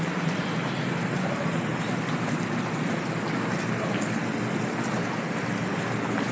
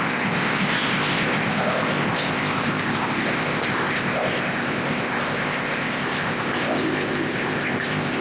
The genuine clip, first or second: first